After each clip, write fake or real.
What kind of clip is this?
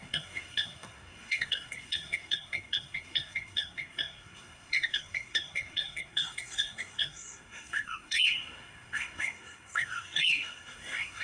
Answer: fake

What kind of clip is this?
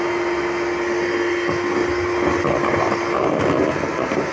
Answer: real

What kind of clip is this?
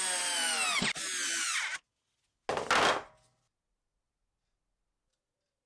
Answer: real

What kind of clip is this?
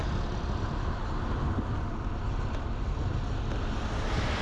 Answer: real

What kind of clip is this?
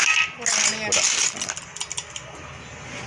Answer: real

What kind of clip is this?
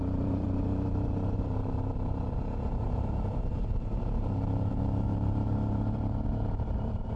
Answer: fake